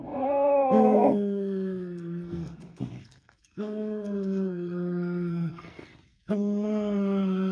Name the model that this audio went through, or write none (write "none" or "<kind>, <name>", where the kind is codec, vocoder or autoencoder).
codec, SNAC